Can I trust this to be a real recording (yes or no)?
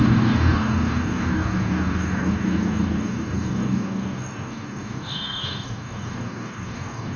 no